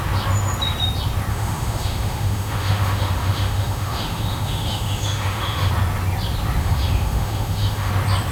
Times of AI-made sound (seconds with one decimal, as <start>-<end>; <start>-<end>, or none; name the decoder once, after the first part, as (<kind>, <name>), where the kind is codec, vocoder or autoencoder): 1.3-5.7 (autoencoder, DAC-VAE); 6.6-7.9